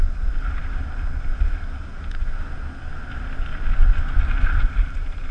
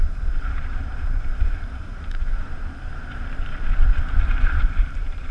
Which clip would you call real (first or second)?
first